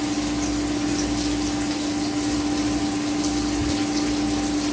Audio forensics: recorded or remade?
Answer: recorded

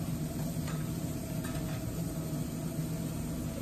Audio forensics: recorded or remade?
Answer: recorded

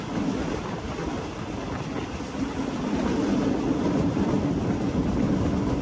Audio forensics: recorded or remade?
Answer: recorded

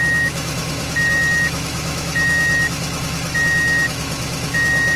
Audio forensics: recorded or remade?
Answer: remade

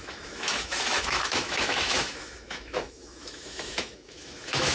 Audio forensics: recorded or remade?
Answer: remade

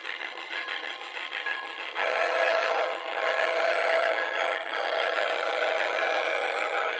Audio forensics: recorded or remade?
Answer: remade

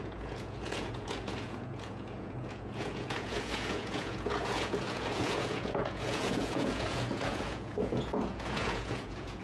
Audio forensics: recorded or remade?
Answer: remade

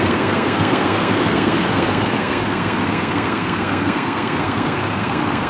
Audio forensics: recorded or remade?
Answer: remade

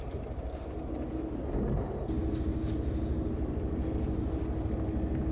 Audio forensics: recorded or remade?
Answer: recorded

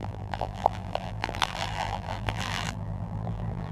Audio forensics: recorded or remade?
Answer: remade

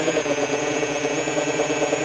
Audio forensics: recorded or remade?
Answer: remade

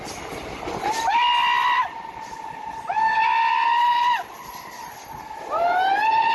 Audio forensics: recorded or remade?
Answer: recorded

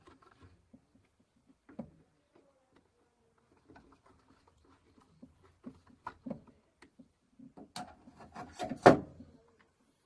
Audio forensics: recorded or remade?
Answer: recorded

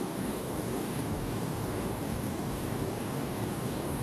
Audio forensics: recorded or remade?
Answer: remade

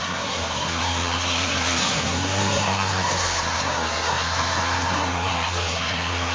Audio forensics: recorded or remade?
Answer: remade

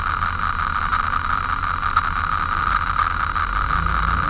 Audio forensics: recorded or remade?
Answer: recorded